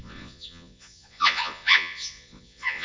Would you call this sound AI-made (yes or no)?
yes